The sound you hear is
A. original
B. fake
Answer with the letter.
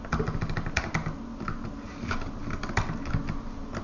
A